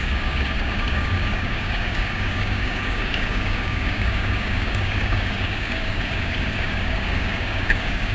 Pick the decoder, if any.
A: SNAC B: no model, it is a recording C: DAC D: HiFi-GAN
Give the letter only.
C